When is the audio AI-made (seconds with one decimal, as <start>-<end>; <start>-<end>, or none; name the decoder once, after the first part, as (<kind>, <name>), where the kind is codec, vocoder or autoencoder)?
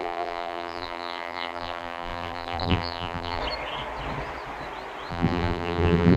0.0-3.4 (vocoder, BigVGAN v2); 5.1-6.2